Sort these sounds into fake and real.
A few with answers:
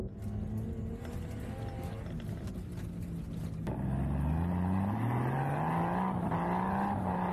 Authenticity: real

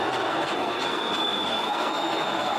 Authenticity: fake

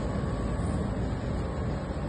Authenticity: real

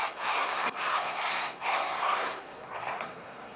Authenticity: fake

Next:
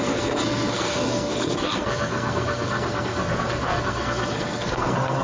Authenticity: fake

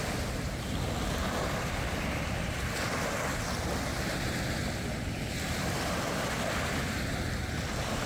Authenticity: real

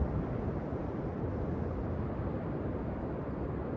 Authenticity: real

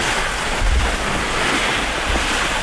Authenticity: real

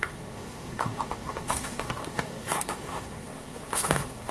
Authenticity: fake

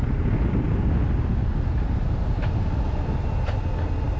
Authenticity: real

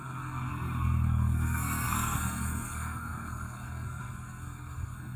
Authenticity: fake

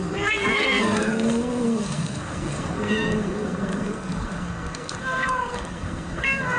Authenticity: fake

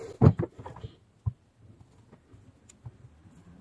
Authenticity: real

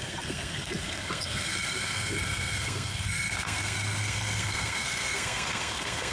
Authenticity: fake